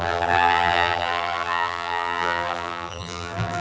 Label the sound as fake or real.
fake